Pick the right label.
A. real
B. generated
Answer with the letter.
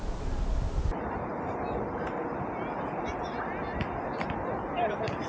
A